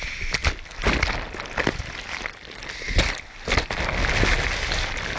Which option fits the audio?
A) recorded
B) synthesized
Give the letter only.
A